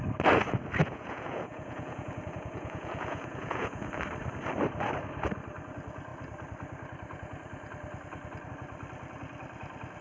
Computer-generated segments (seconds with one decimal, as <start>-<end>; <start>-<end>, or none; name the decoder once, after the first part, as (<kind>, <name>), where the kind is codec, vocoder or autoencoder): 0.8-3.9 (vocoder, Vocos)